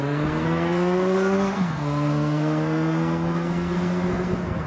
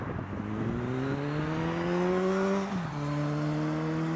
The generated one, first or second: first